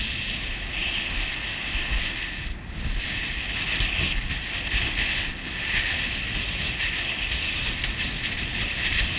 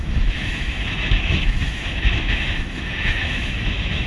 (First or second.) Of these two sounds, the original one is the first